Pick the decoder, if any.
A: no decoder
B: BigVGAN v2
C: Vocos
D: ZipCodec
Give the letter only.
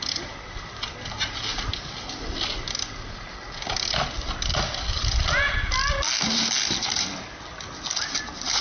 A